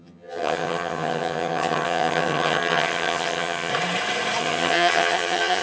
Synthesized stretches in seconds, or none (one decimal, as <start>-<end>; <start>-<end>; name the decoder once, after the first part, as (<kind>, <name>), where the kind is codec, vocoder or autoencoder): 0.0-3.7 (vocoder, HiFi-GAN); 4.4-5.6